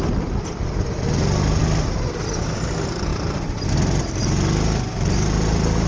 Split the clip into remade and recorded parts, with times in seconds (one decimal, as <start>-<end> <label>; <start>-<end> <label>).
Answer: 0.0-5.9 recorded